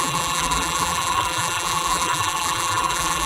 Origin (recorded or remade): remade